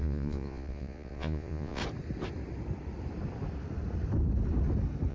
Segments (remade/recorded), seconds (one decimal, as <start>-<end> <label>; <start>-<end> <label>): 0.0-1.8 remade; 1.8-5.1 recorded